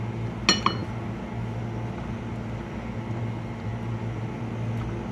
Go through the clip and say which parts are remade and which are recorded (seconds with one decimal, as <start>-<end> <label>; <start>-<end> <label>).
0.0-5.1 recorded